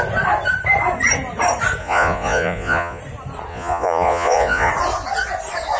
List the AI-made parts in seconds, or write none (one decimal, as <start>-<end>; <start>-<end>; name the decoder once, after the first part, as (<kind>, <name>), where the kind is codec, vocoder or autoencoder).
1.8-3.0 (vocoder, Vocos); 3.5-4.7